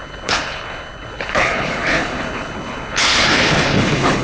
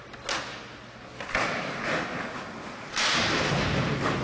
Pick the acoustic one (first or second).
second